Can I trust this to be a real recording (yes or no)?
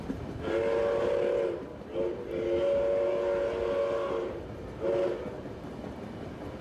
yes